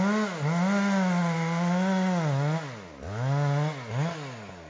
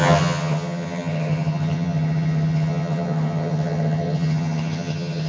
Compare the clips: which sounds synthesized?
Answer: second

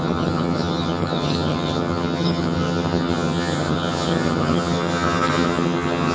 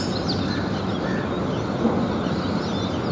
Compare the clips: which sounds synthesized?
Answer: first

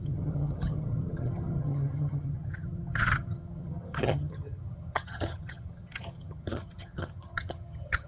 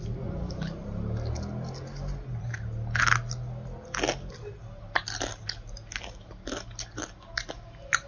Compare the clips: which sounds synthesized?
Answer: first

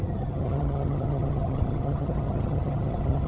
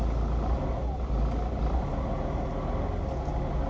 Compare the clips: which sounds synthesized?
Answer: first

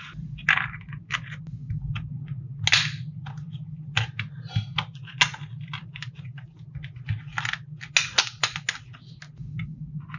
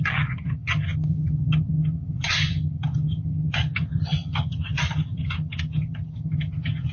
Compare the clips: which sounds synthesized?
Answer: second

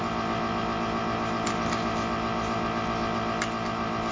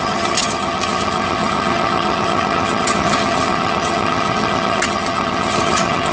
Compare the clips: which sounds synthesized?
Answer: second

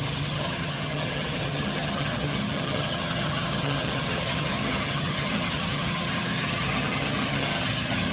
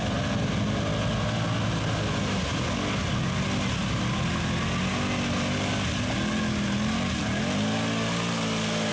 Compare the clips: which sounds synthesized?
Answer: first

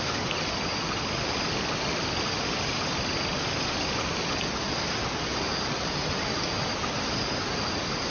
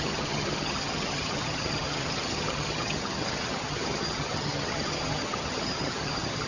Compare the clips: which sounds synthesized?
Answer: second